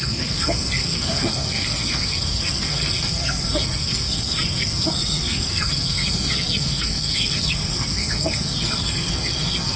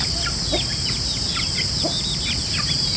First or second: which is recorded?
second